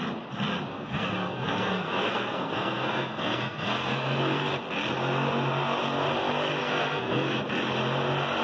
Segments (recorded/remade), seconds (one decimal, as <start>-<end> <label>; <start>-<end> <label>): 0.0-0.7 recorded; 0.7-4.5 remade; 4.5-6.6 recorded; 6.6-7.4 remade; 7.4-8.4 recorded